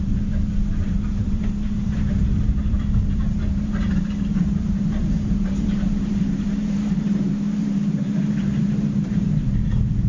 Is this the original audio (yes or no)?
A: no